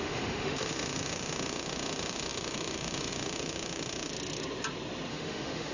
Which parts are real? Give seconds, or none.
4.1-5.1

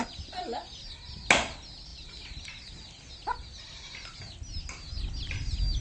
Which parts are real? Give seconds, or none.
0.0-5.8

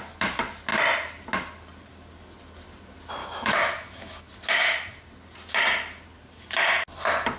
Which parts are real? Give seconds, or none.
0.0-3.2; 4.3-7.4

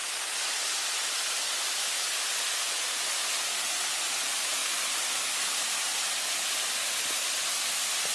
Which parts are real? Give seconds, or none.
0.0-8.1

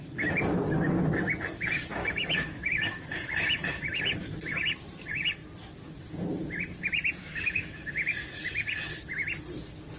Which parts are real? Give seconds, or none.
0.0-2.0; 3.8-7.2; 7.9-10.0

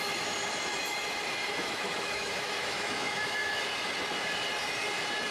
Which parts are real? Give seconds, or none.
0.0-1.6; 3.6-5.3

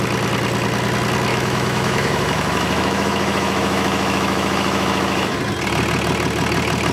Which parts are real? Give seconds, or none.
0.0-1.3; 5.4-6.9

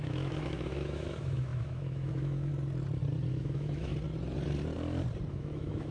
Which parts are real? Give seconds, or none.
2.5-3.3; 3.9-5.3